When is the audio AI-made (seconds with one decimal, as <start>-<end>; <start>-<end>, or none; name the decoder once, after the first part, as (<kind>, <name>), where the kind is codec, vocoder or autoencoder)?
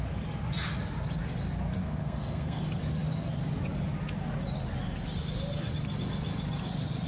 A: 1.8-2.6 (codec, SNAC)